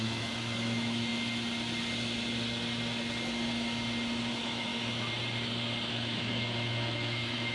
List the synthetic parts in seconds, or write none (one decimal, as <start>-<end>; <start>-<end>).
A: 0.0-1.1; 4.3-4.7; 5.9-7.5